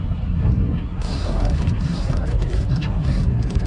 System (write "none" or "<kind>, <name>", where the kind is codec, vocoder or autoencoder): codec, SNAC